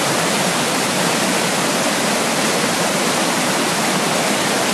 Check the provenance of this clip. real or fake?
real